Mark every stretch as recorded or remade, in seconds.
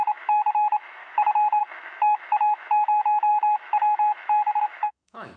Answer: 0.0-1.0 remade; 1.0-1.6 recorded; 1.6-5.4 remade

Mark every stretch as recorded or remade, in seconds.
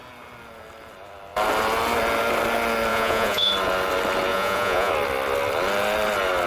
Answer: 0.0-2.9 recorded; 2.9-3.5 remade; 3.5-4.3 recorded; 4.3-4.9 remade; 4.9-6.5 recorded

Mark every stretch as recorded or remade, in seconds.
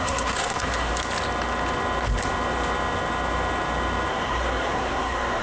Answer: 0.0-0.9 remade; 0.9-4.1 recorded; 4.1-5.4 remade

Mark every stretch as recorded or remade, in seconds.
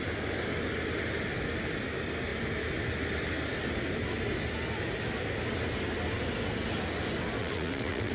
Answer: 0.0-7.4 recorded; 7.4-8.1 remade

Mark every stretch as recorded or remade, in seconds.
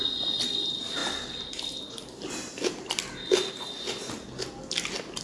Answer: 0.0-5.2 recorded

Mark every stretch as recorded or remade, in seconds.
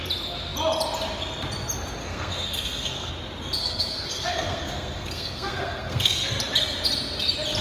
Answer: 0.0-2.0 recorded; 2.0-3.1 remade; 3.1-3.6 recorded; 3.6-6.3 remade; 6.3-7.6 recorded